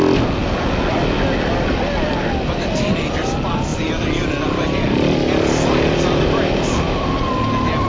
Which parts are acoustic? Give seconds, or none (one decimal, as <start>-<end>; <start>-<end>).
0.0-7.9